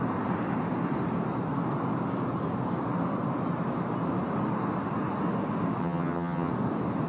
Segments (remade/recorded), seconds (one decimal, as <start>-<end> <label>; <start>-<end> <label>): 0.0-5.8 recorded; 5.8-6.5 remade; 6.5-7.1 recorded